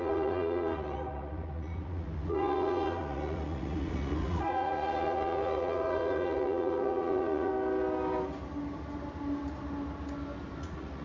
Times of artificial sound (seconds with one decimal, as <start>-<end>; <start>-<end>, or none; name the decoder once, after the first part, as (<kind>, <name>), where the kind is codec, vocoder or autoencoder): 0.0-7.5 (vocoder, Vocos); 10.6-11.0